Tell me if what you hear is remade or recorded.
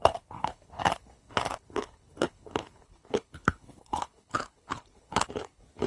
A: remade